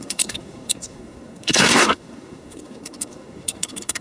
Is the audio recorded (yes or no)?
no